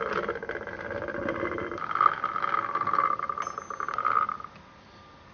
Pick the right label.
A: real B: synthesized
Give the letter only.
A